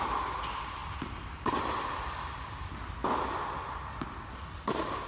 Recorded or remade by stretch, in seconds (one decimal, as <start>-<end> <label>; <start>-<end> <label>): 0.0-5.1 recorded